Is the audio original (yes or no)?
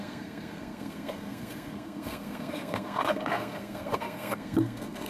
no